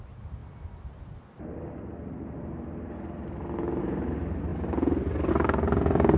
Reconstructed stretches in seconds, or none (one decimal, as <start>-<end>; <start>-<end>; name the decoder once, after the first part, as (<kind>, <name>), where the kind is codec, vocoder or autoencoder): 0.0-0.4 (vocoder, BigVGAN v2); 3.8-4.5; 5.3-6.2